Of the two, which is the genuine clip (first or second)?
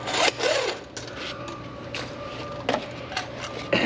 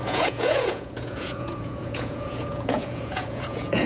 first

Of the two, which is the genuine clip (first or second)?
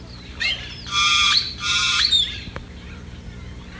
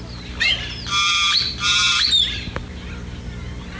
second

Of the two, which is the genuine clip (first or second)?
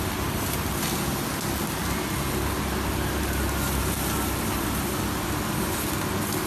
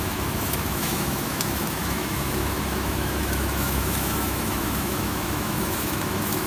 first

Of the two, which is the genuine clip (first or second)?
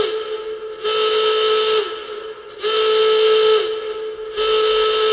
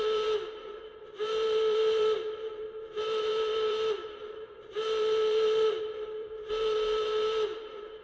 first